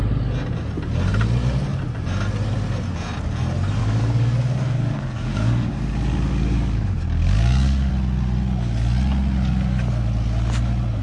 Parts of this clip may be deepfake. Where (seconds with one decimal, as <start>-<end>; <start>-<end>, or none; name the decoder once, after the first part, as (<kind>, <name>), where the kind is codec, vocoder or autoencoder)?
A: 3.8-7.9 (codec, DAC)